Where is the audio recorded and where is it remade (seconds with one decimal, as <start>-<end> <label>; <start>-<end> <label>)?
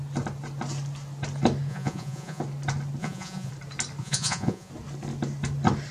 0.0-1.7 recorded; 1.7-2.4 remade; 2.4-3.0 recorded; 3.0-3.5 remade; 3.5-4.0 recorded; 4.0-4.7 remade; 4.7-5.9 recorded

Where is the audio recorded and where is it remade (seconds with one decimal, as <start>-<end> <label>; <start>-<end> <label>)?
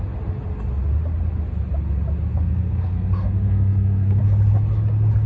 0.0-2.3 recorded; 2.3-4.2 remade; 4.2-5.3 recorded